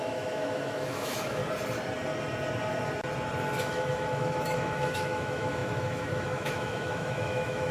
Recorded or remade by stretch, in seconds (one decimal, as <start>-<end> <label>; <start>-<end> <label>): 0.0-1.4 remade; 1.4-3.6 recorded; 3.6-7.7 remade